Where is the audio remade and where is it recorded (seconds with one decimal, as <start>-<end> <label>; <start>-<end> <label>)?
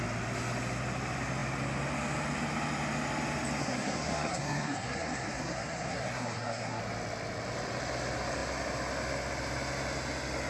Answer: 0.0-3.6 recorded; 3.6-6.8 remade; 6.8-10.5 recorded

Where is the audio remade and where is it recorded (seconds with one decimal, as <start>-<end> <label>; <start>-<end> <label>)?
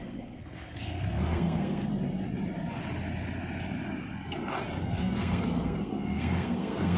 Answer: 0.0-1.9 remade; 1.9-4.8 recorded; 4.8-7.0 remade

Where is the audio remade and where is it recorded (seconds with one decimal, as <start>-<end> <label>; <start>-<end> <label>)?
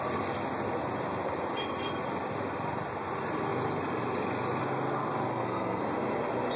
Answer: 0.0-5.3 recorded; 5.3-5.8 remade; 5.8-6.6 recorded